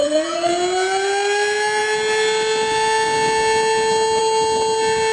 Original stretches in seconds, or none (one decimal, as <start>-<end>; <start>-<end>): 0.5-5.1